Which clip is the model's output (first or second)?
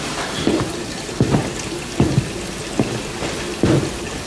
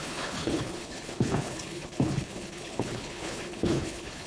second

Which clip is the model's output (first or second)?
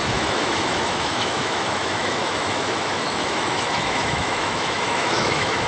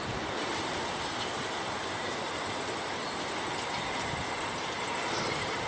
first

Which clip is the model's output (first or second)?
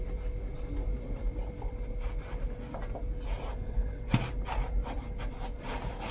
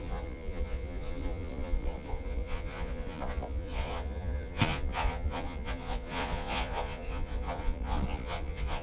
second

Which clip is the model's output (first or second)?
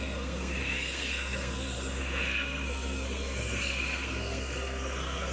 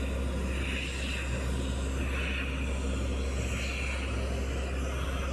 first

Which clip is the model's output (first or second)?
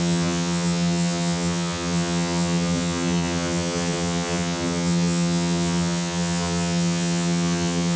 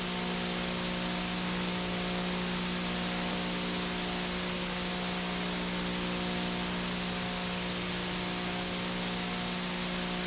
first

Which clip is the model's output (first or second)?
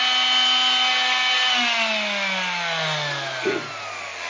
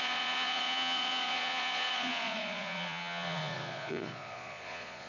second